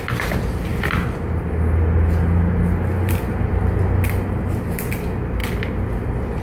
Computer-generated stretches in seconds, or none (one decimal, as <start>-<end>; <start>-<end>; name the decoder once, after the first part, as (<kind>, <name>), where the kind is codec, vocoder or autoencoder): none